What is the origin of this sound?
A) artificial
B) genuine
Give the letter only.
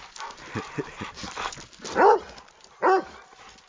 B